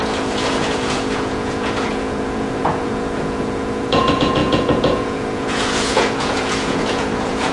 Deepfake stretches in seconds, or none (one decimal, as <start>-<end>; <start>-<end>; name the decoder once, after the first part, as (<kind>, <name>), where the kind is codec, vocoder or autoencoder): 0.0-7.5 (vocoder, Vocos)